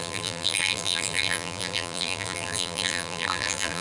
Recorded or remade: remade